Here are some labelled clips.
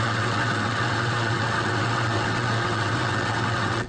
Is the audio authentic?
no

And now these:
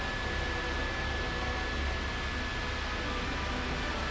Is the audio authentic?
yes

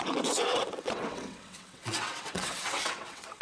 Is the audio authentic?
no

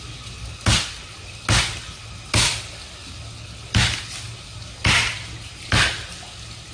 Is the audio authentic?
yes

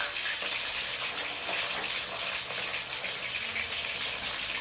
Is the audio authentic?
yes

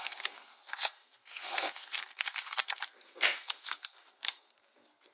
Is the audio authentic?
no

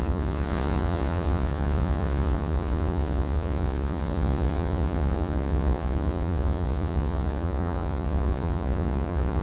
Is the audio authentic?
no